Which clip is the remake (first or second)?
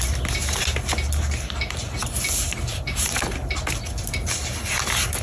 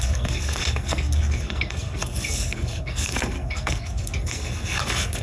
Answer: second